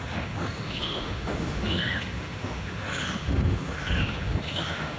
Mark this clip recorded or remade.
remade